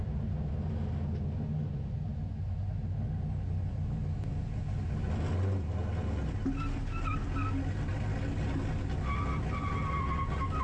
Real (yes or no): yes